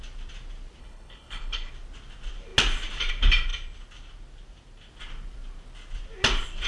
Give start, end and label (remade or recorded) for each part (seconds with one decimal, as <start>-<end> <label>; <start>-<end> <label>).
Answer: 0.0-0.8 recorded; 0.8-1.7 remade; 1.7-6.7 recorded